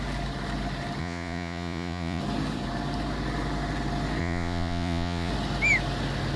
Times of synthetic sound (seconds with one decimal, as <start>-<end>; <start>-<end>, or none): 1.0-2.2; 4.2-5.3